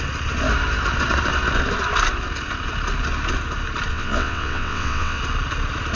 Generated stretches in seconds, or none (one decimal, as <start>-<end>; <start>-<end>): 3.9-5.2